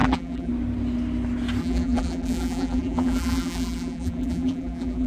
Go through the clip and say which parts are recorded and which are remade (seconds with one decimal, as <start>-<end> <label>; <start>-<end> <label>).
0.0-0.5 remade; 0.5-1.6 recorded; 1.6-5.1 remade